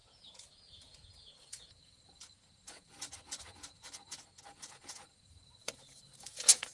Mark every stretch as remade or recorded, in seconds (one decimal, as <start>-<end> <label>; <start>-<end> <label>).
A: 0.0-6.7 remade